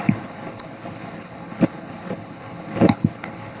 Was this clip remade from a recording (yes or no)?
yes